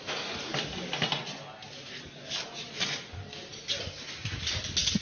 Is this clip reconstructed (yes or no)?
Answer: no